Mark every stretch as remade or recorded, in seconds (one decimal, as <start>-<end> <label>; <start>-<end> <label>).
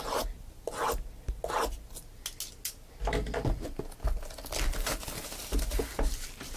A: 0.0-0.8 remade; 0.8-4.7 recorded; 4.7-6.6 remade